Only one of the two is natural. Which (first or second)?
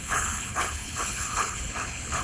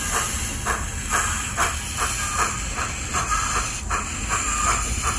second